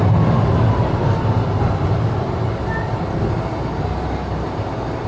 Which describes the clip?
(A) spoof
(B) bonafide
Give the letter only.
B